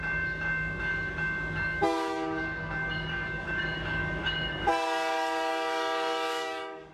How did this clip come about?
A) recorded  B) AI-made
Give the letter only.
B